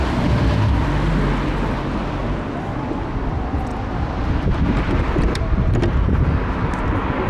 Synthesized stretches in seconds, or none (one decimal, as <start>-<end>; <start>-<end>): 3.7-5.4